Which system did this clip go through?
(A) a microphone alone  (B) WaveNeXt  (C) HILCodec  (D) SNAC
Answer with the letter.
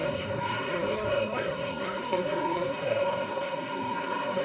D